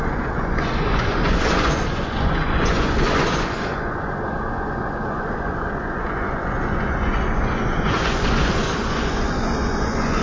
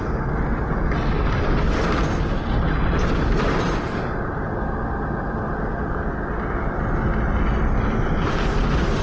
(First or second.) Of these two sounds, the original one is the second